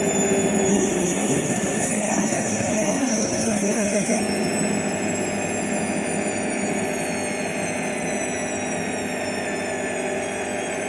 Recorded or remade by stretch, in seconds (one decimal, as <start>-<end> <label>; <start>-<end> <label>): 0.0-0.7 recorded; 0.7-4.2 remade; 4.2-10.9 recorded